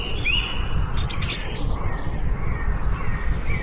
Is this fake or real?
real